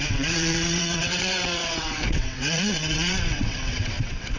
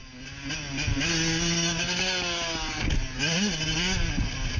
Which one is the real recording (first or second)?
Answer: second